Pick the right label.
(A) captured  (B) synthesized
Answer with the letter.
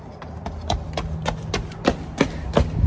A